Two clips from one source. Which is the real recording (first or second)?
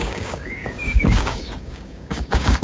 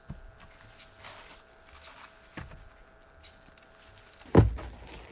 second